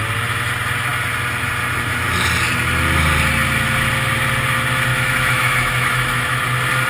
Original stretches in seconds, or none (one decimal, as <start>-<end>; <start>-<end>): 0.0-4.9; 6.4-6.9